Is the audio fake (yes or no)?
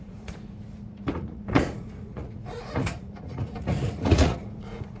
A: yes